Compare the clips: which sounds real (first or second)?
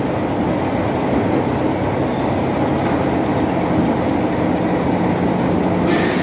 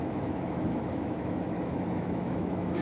first